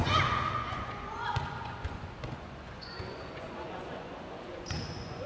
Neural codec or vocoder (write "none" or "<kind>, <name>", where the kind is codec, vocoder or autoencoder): vocoder, Vocos